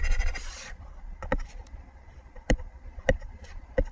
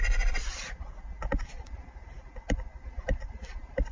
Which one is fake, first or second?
first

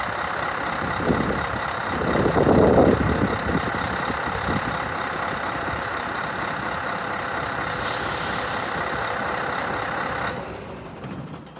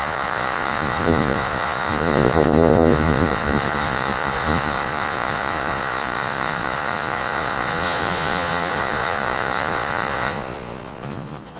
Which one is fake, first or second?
second